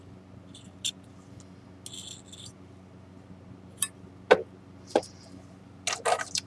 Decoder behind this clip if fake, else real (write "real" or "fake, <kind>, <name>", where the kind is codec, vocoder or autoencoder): real